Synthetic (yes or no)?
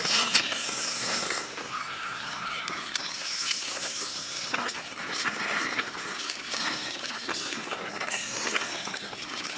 yes